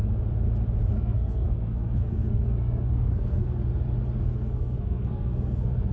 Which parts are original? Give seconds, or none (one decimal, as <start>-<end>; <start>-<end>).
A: 0.0-0.9; 3.6-4.2